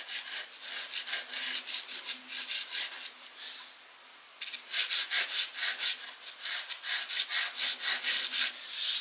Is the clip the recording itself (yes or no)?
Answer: yes